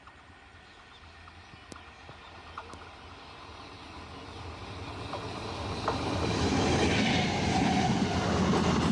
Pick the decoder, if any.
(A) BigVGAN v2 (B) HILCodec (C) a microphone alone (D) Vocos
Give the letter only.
C